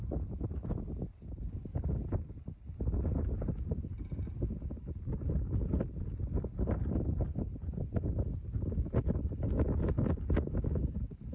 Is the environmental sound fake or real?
real